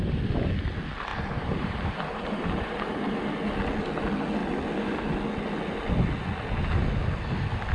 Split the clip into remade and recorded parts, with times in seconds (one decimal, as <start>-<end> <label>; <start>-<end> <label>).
0.0-1.1 recorded; 1.1-3.1 remade; 3.1-7.7 recorded